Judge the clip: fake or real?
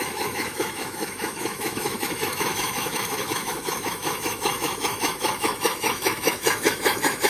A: fake